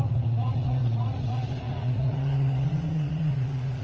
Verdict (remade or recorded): remade